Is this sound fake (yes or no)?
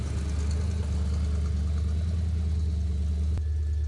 no